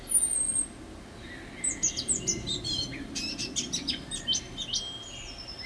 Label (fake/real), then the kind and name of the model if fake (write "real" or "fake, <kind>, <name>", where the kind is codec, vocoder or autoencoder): real